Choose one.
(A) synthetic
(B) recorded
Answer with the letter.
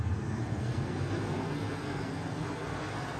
A